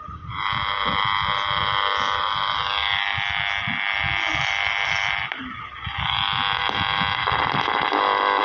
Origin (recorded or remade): remade